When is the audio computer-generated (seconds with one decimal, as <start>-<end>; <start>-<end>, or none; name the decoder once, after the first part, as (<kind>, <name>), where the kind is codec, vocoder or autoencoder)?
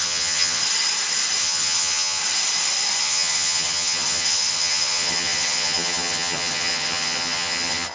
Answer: 0.0-0.6 (vocoder, HiFi-GAN); 1.4-2.2; 3.0-7.9